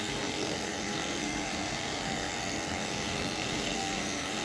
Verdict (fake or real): fake